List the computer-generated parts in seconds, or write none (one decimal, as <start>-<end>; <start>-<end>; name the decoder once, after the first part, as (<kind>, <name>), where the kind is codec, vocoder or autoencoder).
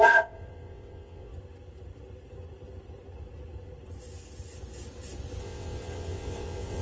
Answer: 0.0-1.3 (vocoder, WaveNeXt); 5.4-6.8